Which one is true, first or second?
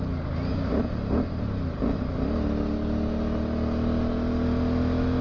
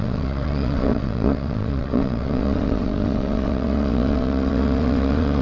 first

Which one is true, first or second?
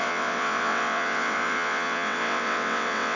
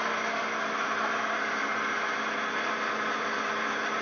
second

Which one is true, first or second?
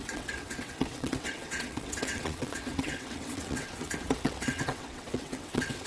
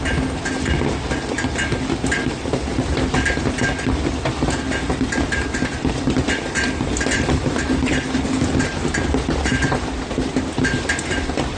second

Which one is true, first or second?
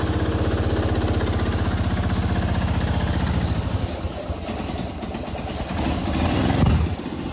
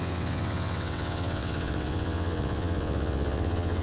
first